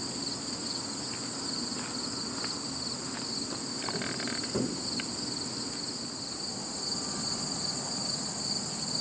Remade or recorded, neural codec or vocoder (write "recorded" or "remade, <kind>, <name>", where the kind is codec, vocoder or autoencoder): recorded